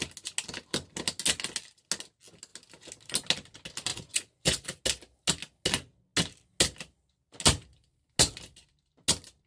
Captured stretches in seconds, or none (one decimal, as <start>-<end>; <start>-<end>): 0.0-3.9; 4.8-9.5